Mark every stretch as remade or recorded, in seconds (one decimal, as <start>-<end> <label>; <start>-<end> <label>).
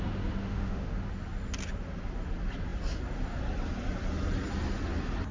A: 0.0-0.4 recorded; 0.4-1.0 remade; 1.0-5.3 recorded